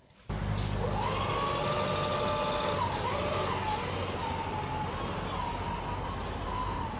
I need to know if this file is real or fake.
real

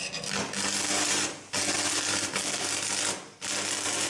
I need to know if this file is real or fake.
real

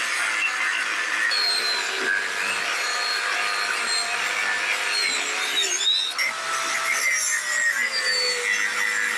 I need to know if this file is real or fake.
real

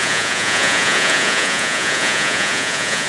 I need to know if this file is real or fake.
fake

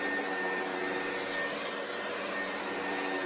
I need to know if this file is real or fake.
real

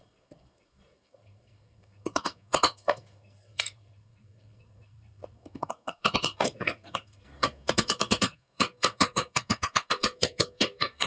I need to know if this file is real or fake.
fake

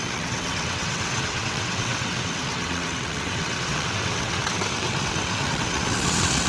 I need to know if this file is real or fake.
fake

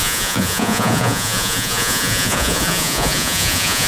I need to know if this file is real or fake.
fake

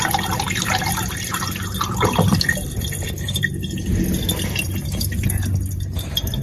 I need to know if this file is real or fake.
real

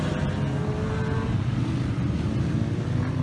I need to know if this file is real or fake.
real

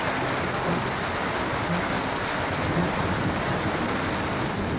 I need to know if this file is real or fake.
real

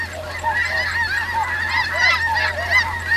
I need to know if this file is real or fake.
real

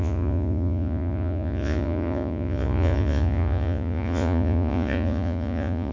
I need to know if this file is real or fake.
fake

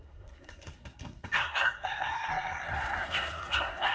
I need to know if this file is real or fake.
fake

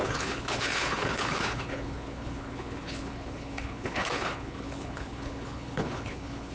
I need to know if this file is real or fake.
fake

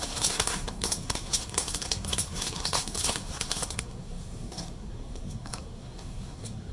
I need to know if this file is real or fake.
fake